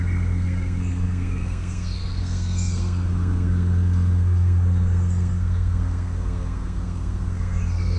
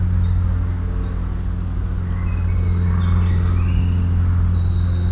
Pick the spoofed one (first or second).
first